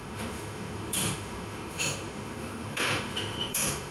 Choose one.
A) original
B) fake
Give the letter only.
B